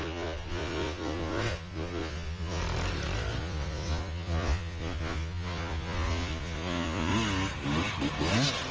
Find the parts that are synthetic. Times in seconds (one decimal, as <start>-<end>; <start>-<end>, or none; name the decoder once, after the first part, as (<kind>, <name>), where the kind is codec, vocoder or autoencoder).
0.0-2.6 (vocoder, Vocos); 3.4-7.1